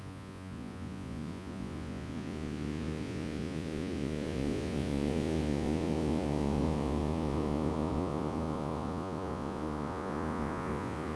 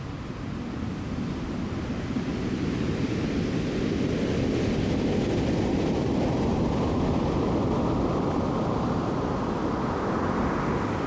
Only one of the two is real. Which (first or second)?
second